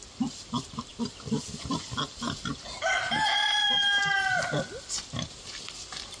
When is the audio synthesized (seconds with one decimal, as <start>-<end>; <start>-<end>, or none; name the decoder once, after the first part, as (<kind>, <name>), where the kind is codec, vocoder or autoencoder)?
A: none